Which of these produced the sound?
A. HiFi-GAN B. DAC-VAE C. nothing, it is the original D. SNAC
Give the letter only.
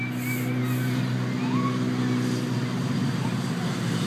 C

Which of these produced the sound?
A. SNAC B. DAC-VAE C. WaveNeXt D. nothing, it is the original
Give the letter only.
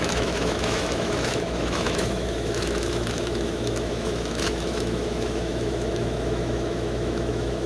B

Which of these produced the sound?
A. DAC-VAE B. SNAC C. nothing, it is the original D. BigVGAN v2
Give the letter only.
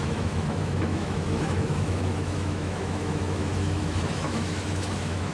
A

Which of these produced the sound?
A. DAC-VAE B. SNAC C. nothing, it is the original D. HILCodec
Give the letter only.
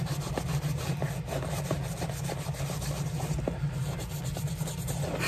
C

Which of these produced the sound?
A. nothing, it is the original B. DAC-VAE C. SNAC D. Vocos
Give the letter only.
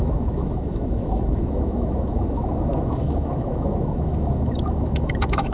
B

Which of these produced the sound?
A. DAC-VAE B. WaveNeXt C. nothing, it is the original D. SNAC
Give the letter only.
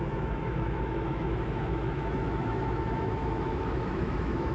A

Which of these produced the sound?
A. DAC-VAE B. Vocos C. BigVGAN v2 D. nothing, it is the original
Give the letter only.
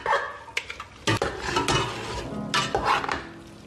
D